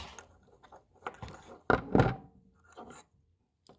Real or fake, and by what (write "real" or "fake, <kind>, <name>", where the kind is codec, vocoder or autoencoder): real